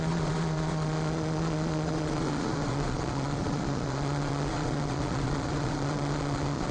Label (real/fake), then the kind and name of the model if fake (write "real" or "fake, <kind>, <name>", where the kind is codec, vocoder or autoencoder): fake, vocoder, Vocos